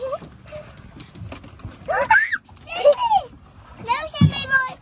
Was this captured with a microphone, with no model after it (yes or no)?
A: yes